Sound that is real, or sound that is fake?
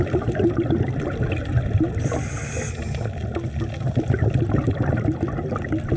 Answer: real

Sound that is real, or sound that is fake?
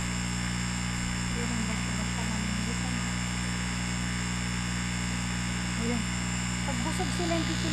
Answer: real